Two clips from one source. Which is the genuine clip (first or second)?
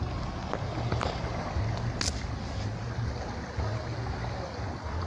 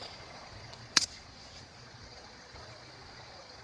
first